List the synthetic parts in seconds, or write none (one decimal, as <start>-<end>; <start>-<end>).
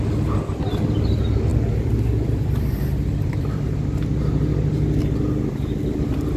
1.5-3.6